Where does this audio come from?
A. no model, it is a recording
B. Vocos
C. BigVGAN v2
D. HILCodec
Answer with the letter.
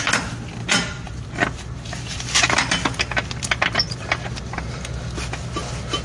A